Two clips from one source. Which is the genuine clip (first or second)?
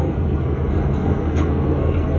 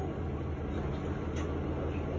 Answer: second